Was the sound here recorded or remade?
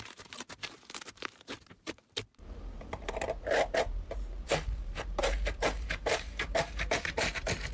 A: remade